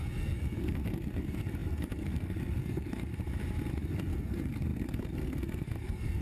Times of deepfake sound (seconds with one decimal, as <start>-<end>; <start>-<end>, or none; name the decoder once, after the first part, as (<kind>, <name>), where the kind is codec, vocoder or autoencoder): 0.0-3.1 (codec, SNAC); 3.7-6.2